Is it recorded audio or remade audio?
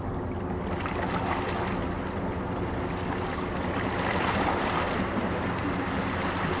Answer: recorded